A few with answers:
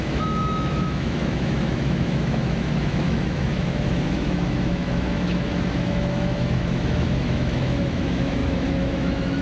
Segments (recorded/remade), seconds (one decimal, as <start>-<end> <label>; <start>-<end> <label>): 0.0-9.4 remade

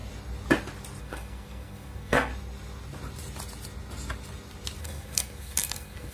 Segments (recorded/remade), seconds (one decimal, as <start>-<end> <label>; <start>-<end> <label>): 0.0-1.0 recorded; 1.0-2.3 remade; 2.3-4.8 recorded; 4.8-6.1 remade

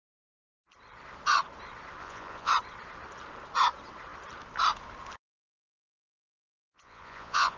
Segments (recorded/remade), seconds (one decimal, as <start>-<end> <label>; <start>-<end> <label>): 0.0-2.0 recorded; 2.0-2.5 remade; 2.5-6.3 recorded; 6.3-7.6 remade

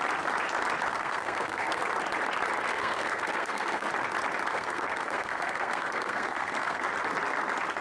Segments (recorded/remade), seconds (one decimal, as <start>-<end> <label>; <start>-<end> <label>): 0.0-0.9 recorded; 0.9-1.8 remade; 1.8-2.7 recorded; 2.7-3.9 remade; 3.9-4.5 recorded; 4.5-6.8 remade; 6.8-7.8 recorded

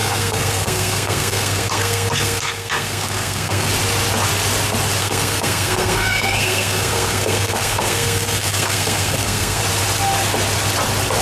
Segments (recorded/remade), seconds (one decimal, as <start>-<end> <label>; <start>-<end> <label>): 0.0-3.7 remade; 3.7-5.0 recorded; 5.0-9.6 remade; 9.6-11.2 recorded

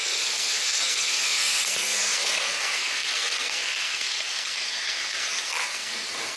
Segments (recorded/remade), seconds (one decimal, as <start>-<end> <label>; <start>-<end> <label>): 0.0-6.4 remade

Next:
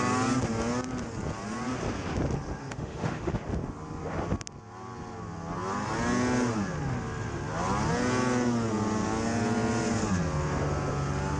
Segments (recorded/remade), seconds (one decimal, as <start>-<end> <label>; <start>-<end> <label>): 0.0-2.6 recorded; 2.6-3.4 remade; 3.4-11.4 recorded

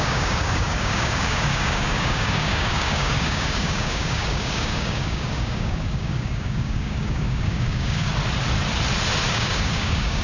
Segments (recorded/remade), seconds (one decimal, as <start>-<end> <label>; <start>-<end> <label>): 0.0-8.1 remade; 8.1-9.3 recorded; 9.3-10.2 remade